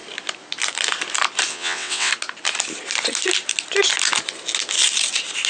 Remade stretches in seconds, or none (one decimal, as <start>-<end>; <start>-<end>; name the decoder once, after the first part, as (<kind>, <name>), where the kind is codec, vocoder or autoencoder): 1.5-2.1 (vocoder, WaveNeXt)